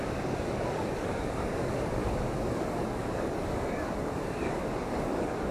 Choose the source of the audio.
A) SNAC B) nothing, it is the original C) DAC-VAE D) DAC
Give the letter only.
D